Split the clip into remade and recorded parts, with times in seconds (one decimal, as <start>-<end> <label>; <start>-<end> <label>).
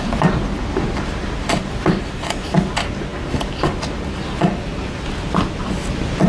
0.0-6.3 recorded